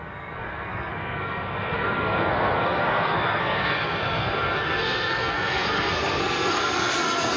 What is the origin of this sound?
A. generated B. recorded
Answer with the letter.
A